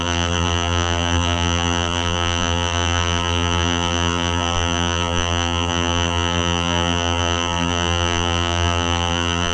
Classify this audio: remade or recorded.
remade